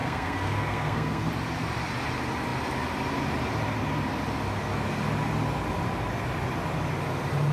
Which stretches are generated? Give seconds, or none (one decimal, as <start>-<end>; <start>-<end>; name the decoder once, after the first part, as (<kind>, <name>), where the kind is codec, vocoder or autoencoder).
0.0-1.3 (codec, SNAC)